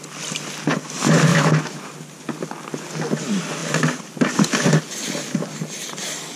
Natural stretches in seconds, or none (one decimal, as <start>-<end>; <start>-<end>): 0.0-1.3; 1.9-6.4